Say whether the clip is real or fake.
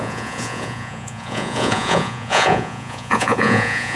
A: fake